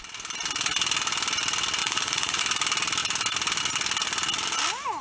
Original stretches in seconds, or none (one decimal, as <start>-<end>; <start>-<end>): 0.0-1.8; 2.4-5.0